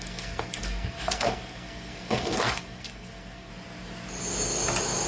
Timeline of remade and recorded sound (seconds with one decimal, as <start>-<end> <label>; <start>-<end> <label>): 0.0-3.5 remade; 3.5-5.1 recorded